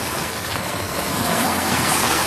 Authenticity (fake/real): fake